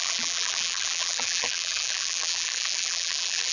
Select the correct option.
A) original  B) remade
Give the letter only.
B